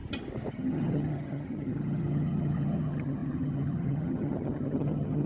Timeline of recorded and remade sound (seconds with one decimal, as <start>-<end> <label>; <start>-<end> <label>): 0.0-0.5 recorded; 0.5-5.3 remade